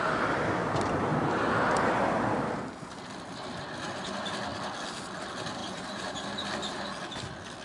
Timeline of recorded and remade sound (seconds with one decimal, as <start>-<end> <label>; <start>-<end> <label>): 0.0-1.1 recorded; 1.1-2.1 remade; 2.1-5.6 recorded; 5.6-6.3 remade; 6.3-7.6 recorded